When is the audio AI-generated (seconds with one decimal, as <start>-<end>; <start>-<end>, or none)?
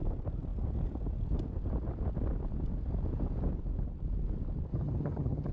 4.7-5.5